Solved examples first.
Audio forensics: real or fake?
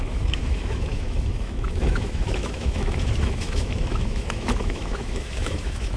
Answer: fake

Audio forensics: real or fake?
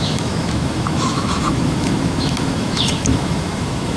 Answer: fake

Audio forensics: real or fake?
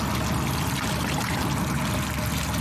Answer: real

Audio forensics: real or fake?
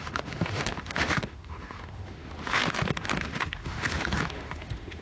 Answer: fake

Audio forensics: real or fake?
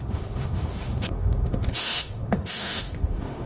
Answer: fake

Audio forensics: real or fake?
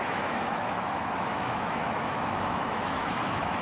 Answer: fake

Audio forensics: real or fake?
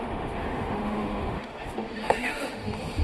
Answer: fake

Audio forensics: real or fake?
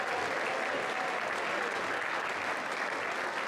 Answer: real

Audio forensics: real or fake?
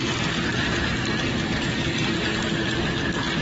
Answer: real